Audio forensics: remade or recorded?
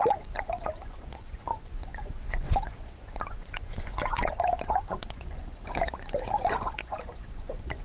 remade